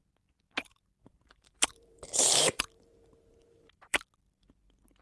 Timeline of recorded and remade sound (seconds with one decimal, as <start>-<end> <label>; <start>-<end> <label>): 0.0-1.0 recorded; 1.0-4.0 remade; 4.0-5.0 recorded